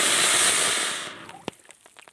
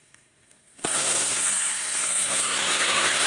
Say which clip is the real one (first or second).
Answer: first